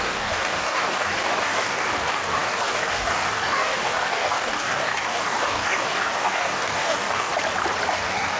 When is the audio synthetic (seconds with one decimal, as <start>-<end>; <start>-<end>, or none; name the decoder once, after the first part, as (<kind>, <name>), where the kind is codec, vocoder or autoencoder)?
0.0-7.3 (codec, DAC); 7.9-8.4

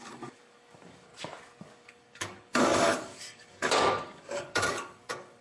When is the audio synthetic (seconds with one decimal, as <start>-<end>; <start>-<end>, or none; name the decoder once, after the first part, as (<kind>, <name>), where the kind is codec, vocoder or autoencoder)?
0.0-1.1 (codec, DAC); 1.6-5.4

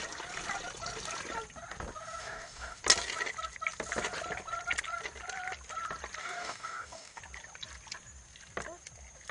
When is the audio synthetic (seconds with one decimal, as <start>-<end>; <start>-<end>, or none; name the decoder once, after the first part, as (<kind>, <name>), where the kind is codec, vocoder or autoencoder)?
2.2-2.8 (codec, DAC); 6.2-7.2

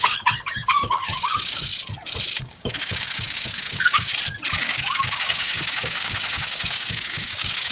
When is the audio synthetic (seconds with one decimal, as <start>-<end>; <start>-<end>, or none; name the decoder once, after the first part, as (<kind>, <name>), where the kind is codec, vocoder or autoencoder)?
0.0-1.7 (codec, DAC); 2.4-4.1; 4.6-7.7

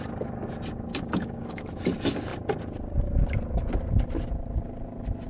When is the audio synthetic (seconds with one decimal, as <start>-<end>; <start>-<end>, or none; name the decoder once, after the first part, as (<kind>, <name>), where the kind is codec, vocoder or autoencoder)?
0.9-1.7 (codec, DAC)